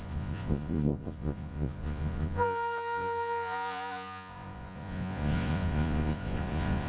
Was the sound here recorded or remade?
remade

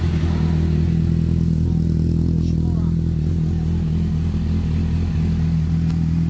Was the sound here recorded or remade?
recorded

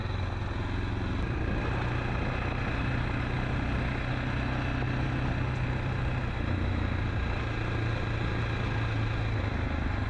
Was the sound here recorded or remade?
recorded